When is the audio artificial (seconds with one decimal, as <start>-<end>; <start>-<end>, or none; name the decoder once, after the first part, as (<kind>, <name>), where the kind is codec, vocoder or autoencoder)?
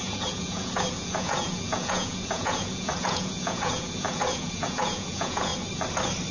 0.0-5.5 (vocoder, Vocos)